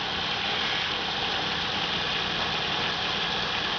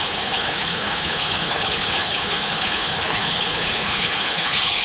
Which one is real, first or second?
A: first